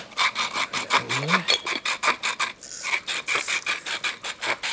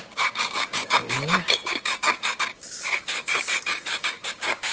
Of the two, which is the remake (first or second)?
second